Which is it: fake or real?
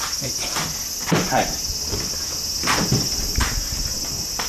real